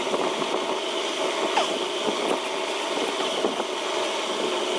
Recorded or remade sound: recorded